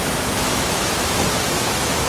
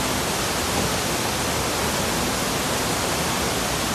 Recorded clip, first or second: second